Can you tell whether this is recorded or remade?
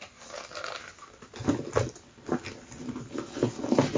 recorded